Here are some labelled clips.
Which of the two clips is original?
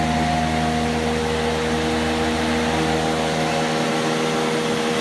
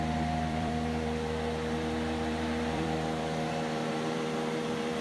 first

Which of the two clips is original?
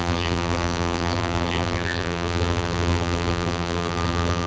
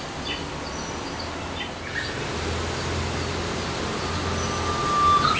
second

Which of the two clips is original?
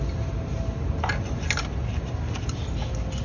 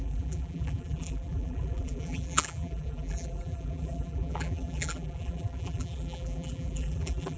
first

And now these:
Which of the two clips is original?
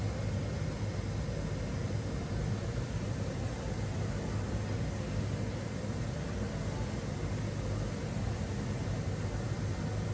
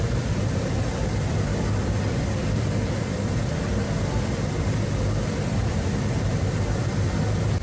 first